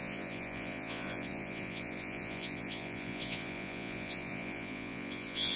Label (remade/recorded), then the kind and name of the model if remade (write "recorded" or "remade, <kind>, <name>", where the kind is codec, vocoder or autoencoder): remade, vocoder, Vocos